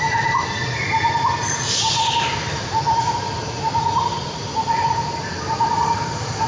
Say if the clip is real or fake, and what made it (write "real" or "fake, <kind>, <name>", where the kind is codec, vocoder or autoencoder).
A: real